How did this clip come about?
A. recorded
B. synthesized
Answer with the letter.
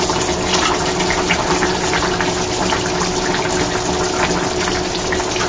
A